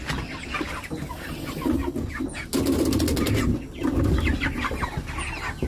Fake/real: real